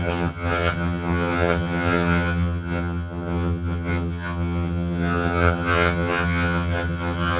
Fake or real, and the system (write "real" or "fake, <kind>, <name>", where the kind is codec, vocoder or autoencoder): fake, vocoder, HiFi-GAN